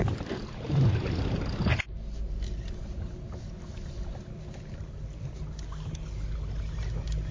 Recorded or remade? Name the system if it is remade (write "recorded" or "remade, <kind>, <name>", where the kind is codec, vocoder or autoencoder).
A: recorded